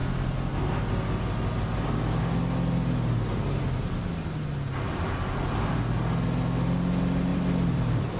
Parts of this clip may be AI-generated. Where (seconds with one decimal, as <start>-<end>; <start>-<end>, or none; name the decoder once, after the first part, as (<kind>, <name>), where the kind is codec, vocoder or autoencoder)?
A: 7.3-8.2 (vocoder, BigVGAN v2)